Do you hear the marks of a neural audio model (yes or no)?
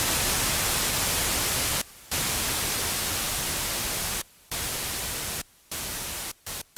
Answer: yes